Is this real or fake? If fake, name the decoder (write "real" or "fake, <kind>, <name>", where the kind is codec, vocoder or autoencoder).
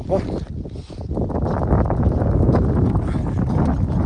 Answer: real